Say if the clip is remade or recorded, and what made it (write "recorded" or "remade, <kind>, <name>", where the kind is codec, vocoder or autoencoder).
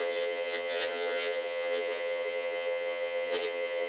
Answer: remade, vocoder, HiFi-GAN